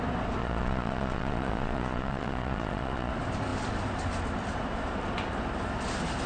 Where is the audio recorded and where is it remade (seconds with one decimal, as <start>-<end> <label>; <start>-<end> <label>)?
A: 0.0-0.4 recorded; 0.4-3.1 remade; 3.1-6.3 recorded